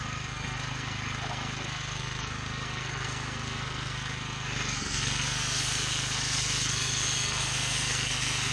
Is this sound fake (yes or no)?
yes